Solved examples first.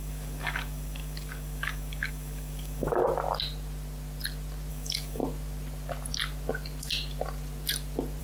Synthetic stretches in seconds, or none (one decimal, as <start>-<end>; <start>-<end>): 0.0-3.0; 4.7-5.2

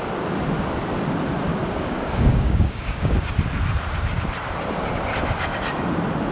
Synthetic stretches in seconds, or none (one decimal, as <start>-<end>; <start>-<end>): 1.5-3.2

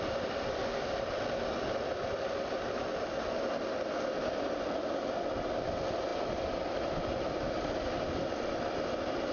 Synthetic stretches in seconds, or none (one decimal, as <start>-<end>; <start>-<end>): none

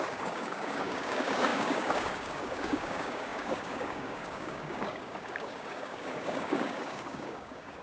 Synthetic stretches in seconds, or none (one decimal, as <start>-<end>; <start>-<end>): 0.0-7.8